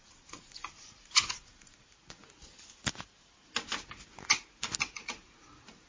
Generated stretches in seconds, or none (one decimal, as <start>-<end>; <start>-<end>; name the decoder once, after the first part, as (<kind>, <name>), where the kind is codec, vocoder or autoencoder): 0.0-2.2 (vocoder, Vocos); 4.9-5.9

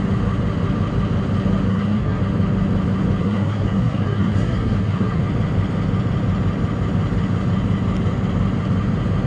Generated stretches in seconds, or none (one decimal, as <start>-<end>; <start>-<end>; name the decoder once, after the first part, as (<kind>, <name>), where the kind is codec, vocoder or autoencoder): 1.7-2.2 (codec, SNAC); 3.2-5.2

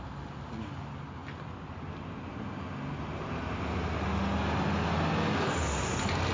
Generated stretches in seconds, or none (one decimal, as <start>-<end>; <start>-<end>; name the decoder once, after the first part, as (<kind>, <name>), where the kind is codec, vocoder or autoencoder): none

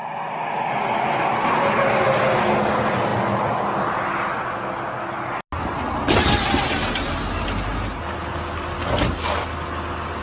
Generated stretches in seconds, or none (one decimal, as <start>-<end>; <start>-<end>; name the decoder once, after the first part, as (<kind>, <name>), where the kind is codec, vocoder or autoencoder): none